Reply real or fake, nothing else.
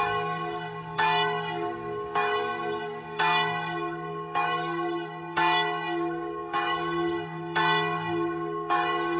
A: fake